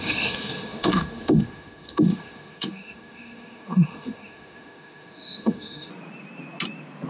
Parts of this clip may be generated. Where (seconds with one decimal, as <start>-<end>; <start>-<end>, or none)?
0.0-5.9